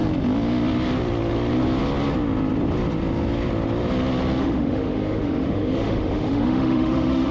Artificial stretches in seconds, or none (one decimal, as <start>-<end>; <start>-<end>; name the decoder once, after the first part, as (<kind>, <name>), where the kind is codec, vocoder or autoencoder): 4.4-7.3 (autoencoder, DAC-VAE)